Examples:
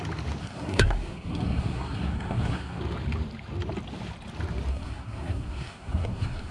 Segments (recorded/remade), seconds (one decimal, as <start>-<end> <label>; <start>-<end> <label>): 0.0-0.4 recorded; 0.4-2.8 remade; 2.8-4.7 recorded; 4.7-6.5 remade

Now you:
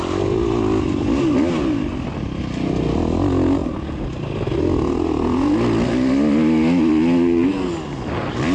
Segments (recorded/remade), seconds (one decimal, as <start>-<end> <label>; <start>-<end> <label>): 0.0-8.5 recorded

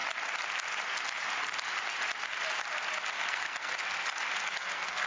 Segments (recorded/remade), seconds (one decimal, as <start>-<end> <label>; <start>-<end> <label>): 0.0-3.1 recorded; 3.1-3.7 remade; 3.7-4.5 recorded; 4.5-5.1 remade